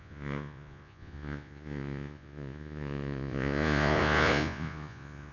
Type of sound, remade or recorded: remade